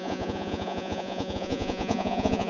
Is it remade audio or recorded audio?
remade